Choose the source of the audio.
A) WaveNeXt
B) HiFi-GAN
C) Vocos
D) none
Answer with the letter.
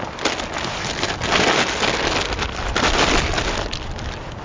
D